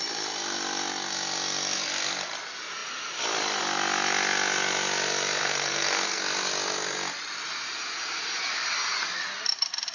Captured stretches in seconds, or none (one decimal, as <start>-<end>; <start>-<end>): 0.0-5.4; 6.2-9.9